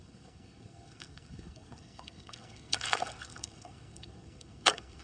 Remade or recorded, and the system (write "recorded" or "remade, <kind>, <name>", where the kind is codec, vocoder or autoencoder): remade, codec, SNAC